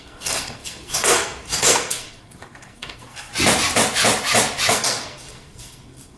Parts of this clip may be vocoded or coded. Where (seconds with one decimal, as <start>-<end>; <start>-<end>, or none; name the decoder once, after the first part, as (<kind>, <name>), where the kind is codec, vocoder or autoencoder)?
0.0-3.3 (codec, SNAC); 4.7-6.2

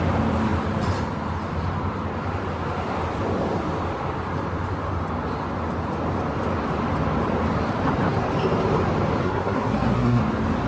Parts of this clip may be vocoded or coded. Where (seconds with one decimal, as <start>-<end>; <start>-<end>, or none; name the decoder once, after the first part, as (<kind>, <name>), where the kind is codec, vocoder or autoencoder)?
9.2-10.2 (codec, SNAC)

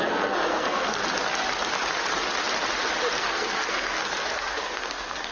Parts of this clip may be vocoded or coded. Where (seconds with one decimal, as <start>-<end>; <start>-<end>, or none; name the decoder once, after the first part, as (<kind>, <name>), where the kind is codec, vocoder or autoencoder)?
0.0-1.0 (codec, SNAC); 3.2-5.3

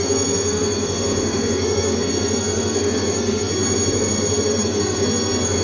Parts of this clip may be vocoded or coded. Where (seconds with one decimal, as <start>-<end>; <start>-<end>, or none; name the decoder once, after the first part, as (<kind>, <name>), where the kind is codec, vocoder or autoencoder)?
0.0-5.6 (codec, SNAC)

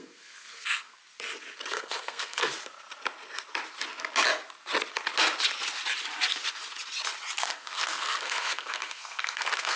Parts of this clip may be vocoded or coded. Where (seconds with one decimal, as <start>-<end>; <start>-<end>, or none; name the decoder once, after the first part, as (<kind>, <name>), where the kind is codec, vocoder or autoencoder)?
0.0-1.0 (codec, SNAC); 1.7-2.5; 7.4-9.8